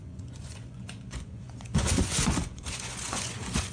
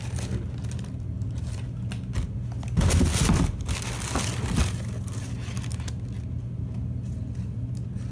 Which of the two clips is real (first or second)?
second